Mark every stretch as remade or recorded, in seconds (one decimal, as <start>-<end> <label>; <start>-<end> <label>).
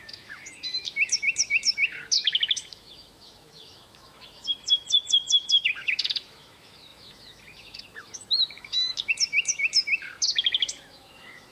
0.0-11.5 remade